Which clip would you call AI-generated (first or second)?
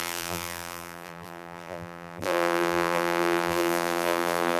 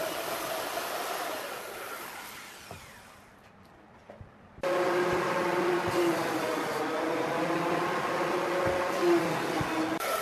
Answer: first